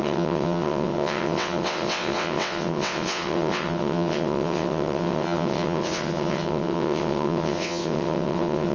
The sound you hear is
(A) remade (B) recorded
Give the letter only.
A